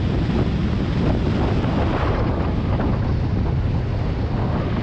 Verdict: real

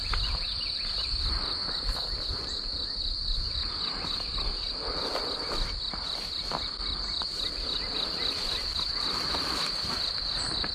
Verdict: real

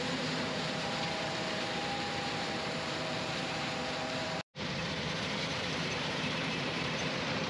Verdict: fake